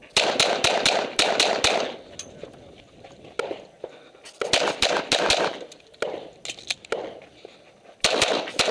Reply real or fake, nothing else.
real